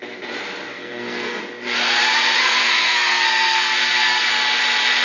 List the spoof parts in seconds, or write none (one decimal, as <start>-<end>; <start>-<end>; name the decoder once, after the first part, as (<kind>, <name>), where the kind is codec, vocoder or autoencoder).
0.7-1.4 (codec, SNAC); 2.4-4.3